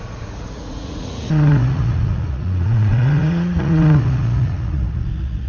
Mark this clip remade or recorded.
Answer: remade